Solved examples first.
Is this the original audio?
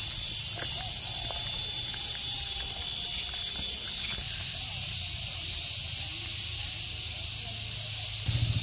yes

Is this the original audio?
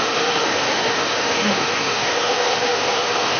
no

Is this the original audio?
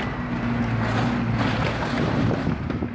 yes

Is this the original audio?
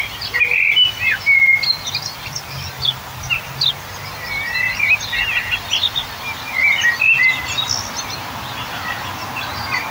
yes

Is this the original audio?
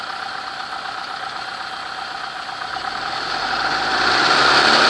yes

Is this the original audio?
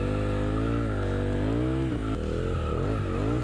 yes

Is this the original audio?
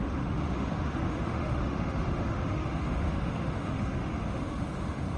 no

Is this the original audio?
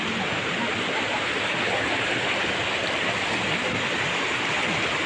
yes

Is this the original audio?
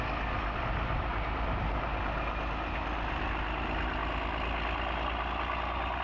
yes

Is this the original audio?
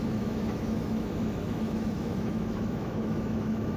no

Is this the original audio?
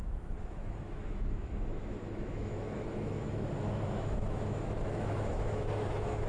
no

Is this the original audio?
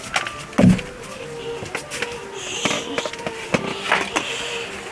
yes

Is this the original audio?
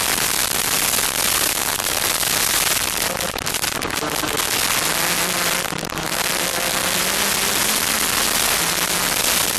yes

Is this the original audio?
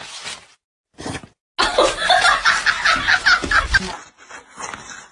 yes